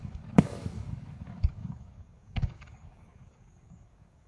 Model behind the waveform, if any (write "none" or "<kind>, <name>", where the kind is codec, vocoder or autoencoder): codec, DAC